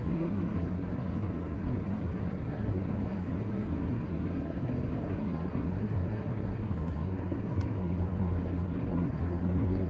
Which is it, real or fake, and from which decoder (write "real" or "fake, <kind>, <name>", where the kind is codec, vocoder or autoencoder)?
fake, codec, SNAC